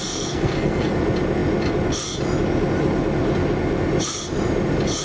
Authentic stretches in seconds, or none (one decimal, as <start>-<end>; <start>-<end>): 0.9-5.0